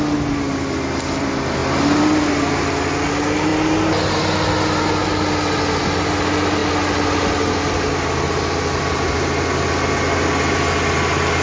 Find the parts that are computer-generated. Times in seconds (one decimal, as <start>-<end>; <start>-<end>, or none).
none